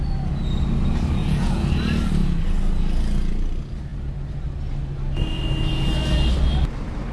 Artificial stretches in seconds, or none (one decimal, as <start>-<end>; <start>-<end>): 1.2-1.7